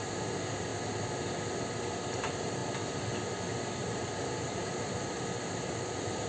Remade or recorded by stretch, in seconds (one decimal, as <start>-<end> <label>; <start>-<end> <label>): 0.0-0.7 remade; 0.7-2.1 recorded; 2.1-2.6 remade; 2.6-3.8 recorded; 3.8-6.3 remade